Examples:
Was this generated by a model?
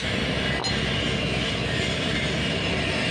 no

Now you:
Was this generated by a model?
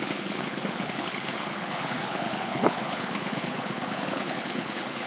yes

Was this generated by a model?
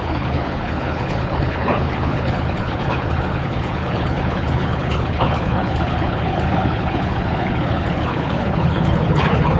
yes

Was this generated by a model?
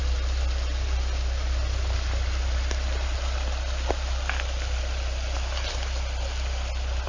no